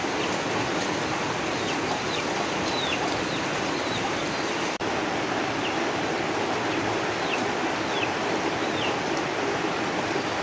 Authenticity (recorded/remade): recorded